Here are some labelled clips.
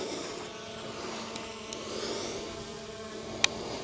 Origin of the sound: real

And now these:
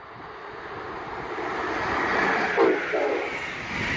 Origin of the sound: real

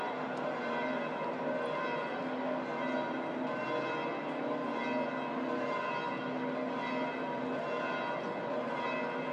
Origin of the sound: real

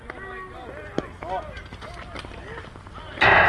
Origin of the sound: real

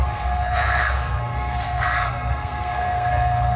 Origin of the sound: fake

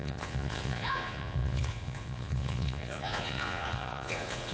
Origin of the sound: fake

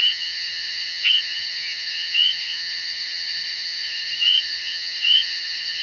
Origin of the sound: fake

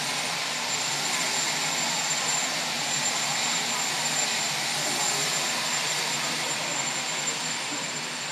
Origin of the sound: fake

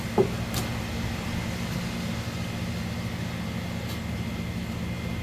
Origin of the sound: real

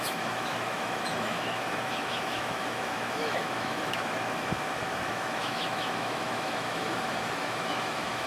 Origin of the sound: fake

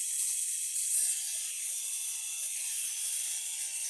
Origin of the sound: fake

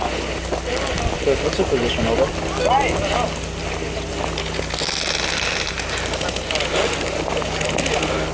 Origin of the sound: real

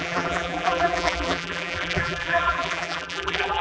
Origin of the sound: fake